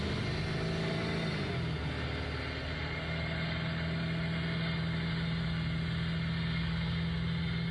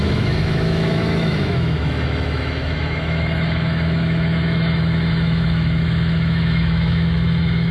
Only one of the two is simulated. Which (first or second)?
second